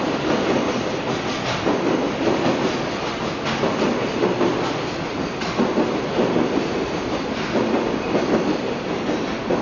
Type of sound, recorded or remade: recorded